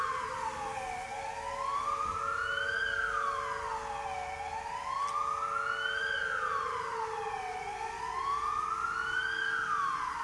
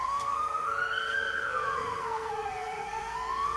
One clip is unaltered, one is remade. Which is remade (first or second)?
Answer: second